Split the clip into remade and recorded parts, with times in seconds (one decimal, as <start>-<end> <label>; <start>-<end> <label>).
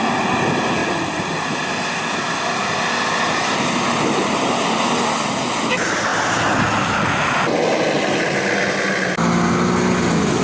0.0-10.4 recorded